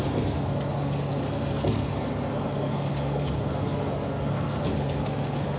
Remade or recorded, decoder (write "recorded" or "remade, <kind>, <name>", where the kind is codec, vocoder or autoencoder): remade, codec, SNAC